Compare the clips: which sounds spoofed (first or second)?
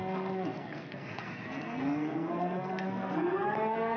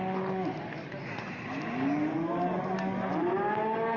first